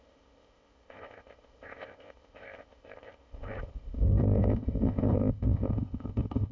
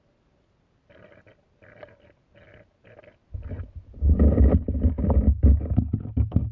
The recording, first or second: second